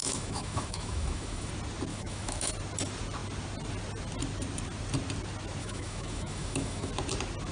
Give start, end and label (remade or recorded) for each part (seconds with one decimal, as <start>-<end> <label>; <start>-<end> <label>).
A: 0.0-1.5 remade; 1.5-1.9 recorded; 1.9-2.5 remade; 2.5-5.6 recorded; 5.6-6.9 remade; 6.9-7.5 recorded